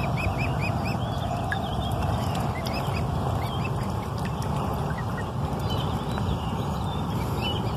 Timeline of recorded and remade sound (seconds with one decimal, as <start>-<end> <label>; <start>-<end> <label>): 0.0-0.6 remade; 0.6-1.7 recorded; 1.7-4.7 remade; 4.7-6.5 recorded; 6.5-7.8 remade